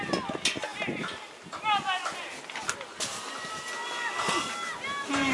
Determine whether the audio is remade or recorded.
recorded